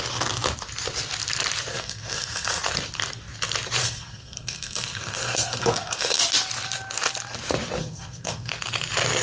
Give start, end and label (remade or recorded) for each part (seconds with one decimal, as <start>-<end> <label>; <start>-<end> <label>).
0.0-1.7 recorded; 1.7-2.6 remade; 2.6-3.8 recorded; 3.8-6.2 remade; 6.2-7.8 recorded; 7.8-8.5 remade; 8.5-9.2 recorded